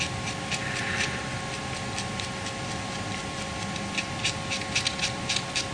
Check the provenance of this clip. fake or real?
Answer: real